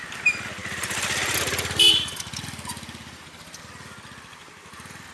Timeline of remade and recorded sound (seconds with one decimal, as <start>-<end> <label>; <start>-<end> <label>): 0.0-5.1 recorded